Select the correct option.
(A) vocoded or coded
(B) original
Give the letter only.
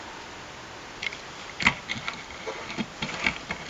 B